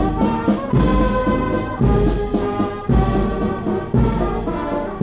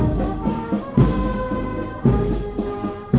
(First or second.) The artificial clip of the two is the second